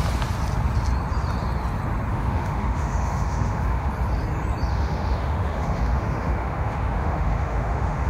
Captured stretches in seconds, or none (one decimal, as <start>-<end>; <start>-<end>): 0.0-2.1; 3.9-4.7